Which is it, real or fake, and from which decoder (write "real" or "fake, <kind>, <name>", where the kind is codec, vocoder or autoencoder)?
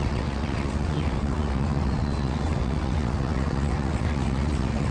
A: fake, vocoder, WaveNeXt